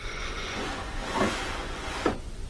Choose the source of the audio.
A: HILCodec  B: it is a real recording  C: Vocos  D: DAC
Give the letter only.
C